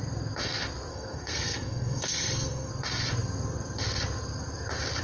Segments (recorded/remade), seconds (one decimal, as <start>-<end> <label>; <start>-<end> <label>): 0.0-0.9 recorded; 0.9-2.7 remade; 2.7-5.0 recorded